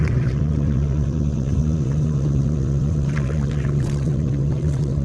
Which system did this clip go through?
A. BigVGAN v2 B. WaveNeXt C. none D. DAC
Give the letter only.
B